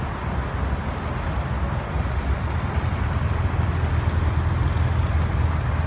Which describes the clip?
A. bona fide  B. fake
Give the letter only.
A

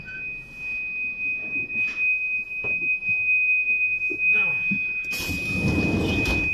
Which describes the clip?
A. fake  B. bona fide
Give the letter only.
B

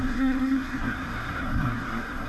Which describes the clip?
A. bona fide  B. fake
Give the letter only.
B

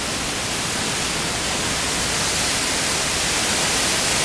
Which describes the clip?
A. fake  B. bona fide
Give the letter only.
B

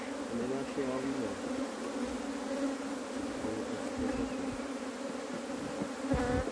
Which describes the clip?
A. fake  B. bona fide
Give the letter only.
B